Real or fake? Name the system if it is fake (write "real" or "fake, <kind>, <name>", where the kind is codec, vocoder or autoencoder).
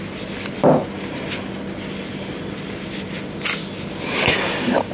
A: real